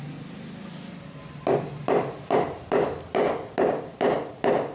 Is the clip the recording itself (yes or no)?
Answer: no